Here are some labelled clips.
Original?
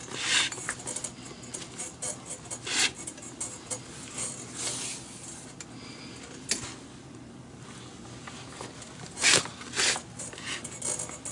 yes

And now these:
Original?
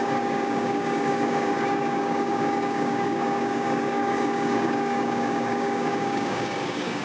no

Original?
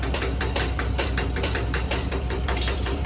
no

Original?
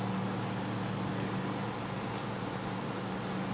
yes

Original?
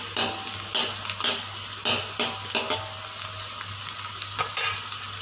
yes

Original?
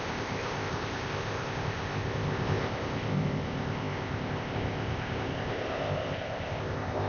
no